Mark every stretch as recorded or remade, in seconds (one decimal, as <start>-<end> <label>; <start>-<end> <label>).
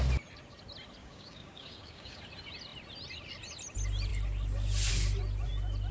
0.0-1.0 recorded; 1.0-2.2 remade; 2.2-5.9 recorded